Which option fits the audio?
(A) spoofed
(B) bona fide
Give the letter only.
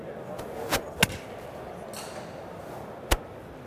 B